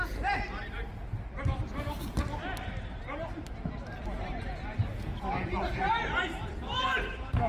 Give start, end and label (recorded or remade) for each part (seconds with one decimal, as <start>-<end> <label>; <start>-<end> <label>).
0.0-7.5 recorded